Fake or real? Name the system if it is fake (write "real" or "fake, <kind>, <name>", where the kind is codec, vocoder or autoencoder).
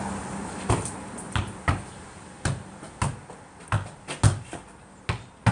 real